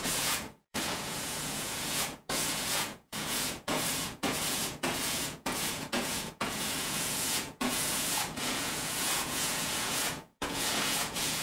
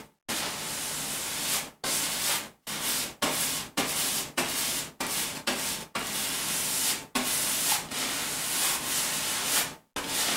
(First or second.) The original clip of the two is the second